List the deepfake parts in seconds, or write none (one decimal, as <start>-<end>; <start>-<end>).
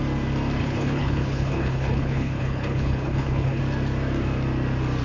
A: 0.6-3.6